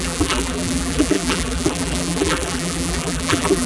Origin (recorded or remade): remade